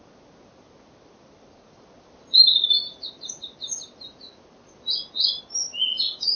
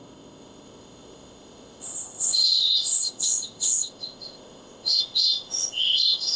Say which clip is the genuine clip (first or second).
first